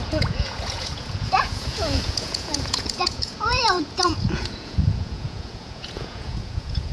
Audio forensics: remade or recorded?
remade